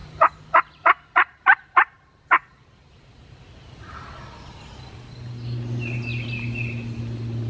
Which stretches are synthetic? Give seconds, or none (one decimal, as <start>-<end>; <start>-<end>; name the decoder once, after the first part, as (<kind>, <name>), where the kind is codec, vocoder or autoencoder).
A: 0.0-4.2 (vocoder, BigVGAN v2)